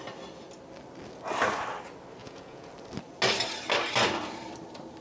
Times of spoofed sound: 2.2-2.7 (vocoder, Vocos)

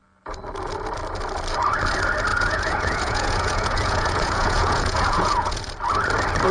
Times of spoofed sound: 2.3-5.6 (vocoder, Vocos)

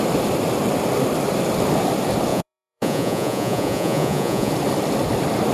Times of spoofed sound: 2.3-4.5 (vocoder, Vocos)

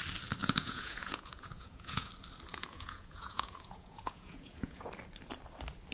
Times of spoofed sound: 0.4-2.1 (vocoder, Vocos); 2.5-4.9

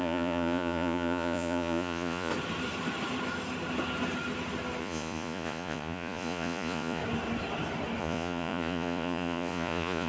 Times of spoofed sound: 0.0-2.3 (vocoder, Vocos); 4.8-7.0; 8.0-10.1

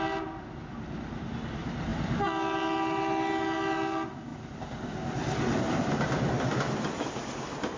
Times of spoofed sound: none